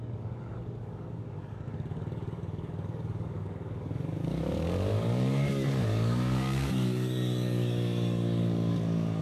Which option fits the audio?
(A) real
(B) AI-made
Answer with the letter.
B